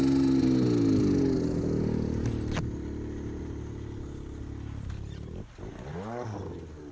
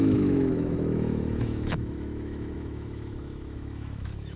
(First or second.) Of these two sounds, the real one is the first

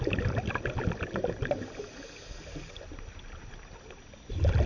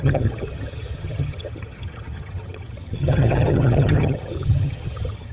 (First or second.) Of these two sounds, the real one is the first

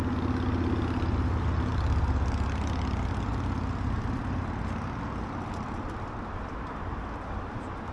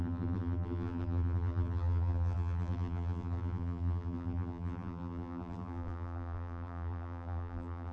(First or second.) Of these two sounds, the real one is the first